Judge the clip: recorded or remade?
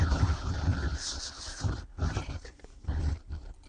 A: remade